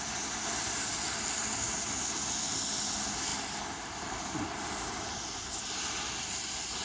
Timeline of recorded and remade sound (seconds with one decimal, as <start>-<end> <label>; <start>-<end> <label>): 0.0-6.8 recorded